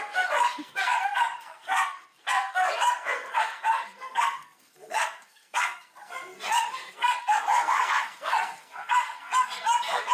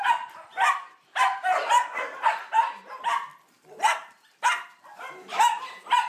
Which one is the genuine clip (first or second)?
second